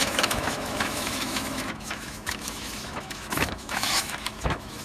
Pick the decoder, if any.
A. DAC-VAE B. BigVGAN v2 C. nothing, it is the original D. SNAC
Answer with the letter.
A